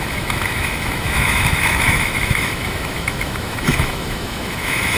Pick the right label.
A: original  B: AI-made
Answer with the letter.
B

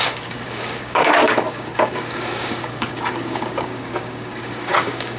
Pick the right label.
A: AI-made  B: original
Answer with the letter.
A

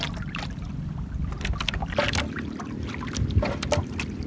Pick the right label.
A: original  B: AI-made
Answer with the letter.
A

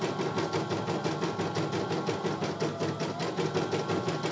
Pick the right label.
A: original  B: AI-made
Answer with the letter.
A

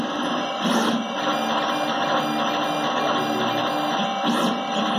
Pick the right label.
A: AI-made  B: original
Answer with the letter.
B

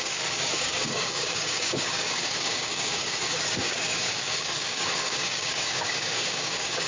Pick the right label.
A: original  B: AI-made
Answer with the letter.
B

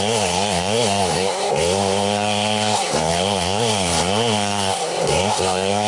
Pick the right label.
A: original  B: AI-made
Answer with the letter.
B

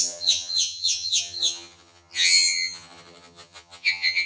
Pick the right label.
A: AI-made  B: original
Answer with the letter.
A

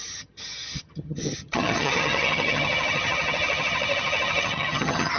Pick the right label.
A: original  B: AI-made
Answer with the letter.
B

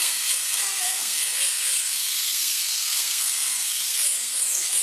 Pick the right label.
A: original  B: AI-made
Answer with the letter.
B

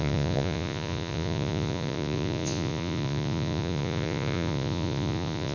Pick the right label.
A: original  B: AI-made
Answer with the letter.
B